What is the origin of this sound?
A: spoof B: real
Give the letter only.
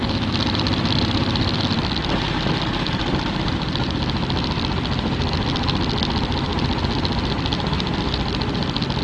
B